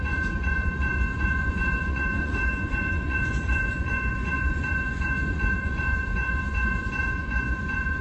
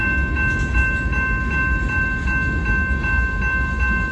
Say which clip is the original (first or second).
second